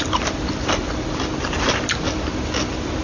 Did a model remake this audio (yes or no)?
no